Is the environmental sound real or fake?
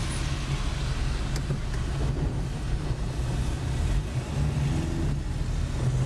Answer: real